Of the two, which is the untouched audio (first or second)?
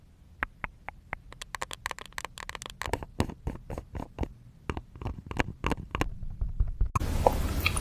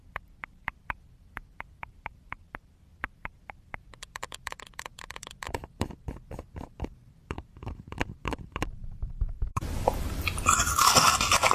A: first